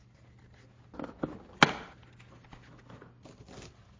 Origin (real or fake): real